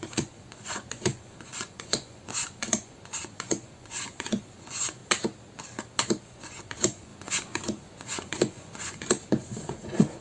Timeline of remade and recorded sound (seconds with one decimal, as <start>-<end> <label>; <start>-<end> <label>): 0.0-5.0 remade; 5.0-6.2 recorded; 6.2-10.2 remade